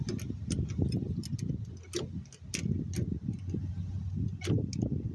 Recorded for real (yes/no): yes